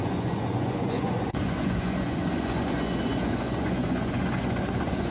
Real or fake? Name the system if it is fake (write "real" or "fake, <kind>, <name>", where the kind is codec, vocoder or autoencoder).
fake, vocoder, Vocos